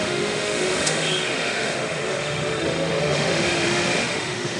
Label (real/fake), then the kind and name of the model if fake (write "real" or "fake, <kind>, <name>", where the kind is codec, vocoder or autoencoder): fake, autoencoder, DAC-VAE